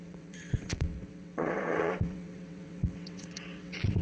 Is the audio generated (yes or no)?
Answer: yes